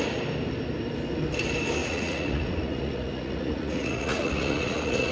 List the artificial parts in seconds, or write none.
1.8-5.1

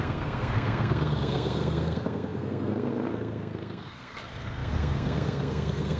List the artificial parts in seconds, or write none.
0.0-6.0